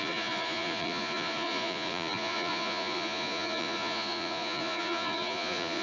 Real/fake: fake